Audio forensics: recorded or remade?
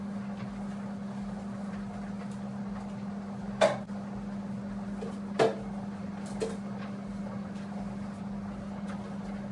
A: recorded